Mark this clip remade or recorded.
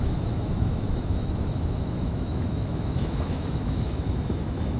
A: remade